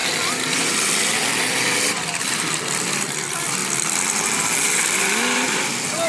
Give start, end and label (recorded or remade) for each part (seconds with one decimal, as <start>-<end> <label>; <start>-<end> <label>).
0.0-6.1 remade